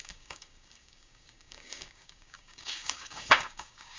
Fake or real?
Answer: fake